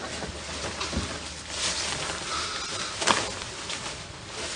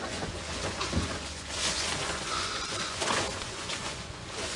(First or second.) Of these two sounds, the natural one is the first